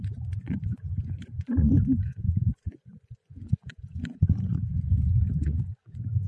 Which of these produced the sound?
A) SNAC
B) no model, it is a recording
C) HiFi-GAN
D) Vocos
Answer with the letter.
D